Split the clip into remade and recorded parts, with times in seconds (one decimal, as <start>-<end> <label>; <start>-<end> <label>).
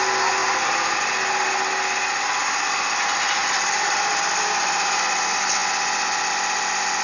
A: 0.0-0.4 recorded; 0.4-1.0 remade; 1.0-3.4 recorded; 3.4-5.0 remade; 5.0-7.0 recorded